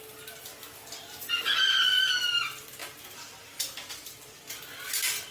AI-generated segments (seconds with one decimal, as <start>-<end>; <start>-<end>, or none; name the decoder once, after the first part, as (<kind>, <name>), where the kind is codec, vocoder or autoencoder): 2.8-4.6 (vocoder, BigVGAN v2)